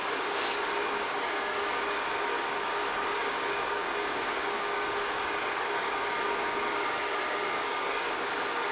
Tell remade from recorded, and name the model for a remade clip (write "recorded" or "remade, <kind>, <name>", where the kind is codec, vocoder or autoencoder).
remade, codec, DAC